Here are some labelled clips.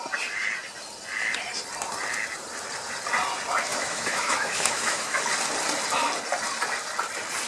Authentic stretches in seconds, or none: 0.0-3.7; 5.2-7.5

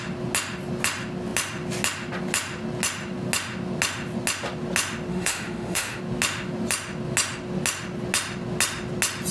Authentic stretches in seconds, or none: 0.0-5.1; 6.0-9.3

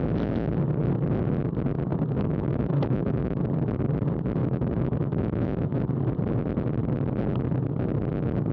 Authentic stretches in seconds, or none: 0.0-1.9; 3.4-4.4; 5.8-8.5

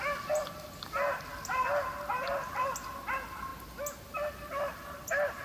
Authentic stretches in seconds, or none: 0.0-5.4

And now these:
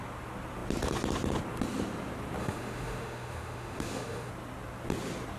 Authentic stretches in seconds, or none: 0.0-2.4; 4.3-5.4